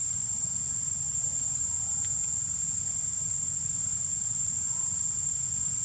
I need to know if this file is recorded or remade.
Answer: recorded